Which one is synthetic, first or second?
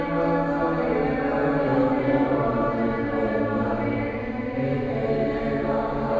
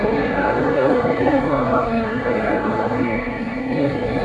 second